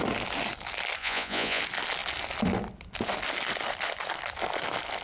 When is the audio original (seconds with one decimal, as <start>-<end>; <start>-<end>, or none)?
0.0-1.0; 1.6-5.0